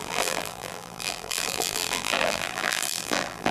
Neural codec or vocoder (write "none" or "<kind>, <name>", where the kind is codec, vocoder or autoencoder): vocoder, BigVGAN v2